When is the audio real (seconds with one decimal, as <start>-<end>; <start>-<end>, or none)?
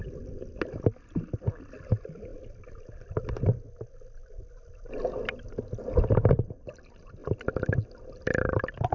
2.3-5.2; 7.2-8.9